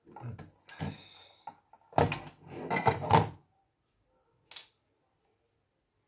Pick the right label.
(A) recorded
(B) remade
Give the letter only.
A